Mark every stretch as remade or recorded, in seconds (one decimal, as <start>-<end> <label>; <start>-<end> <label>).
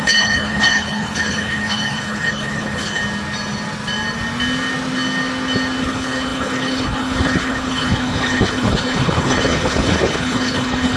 0.0-3.0 remade; 3.0-5.8 recorded; 5.8-11.0 remade